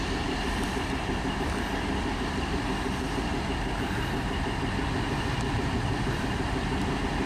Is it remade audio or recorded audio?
recorded